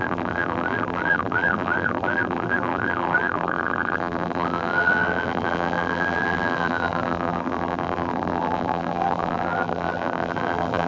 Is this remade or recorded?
remade